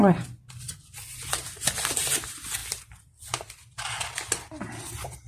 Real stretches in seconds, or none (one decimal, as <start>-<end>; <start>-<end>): 0.0-2.6